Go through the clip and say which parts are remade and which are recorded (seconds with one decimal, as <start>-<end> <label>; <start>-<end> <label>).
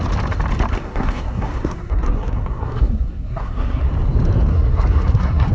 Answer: 0.0-0.8 recorded; 0.8-3.9 remade; 3.9-4.5 recorded; 4.5-5.5 remade